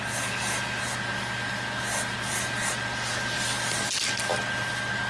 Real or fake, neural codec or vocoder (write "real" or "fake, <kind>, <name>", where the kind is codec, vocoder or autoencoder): real